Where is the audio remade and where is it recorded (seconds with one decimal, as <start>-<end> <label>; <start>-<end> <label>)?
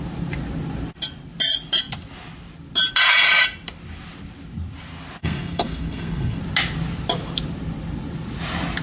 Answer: 0.0-5.2 recorded; 5.2-6.4 remade; 6.4-8.8 recorded